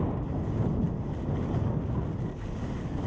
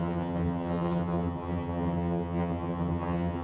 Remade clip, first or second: second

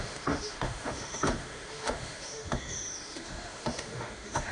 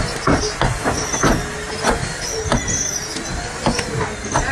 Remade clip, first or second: first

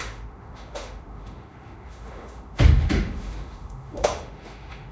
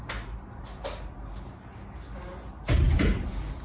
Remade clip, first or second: first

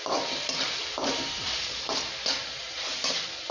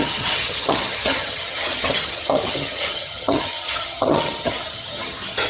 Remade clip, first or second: second